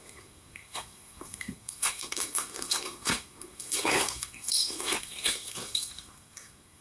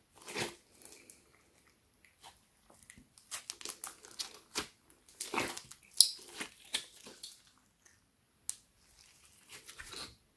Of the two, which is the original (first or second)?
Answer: second